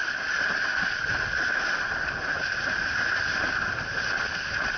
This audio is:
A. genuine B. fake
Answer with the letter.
A